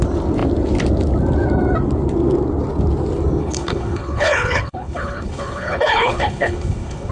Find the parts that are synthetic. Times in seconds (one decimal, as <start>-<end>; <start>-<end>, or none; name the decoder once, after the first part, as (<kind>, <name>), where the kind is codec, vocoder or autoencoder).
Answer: 3.4-7.1 (codec, HILCodec)